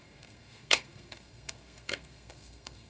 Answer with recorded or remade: remade